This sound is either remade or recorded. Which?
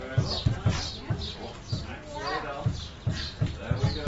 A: recorded